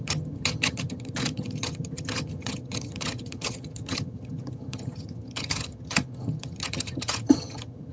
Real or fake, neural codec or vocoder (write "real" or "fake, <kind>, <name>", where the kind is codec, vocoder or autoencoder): fake, vocoder, HiFi-GAN